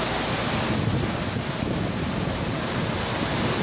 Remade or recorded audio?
recorded